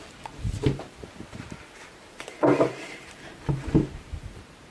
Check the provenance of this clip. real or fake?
fake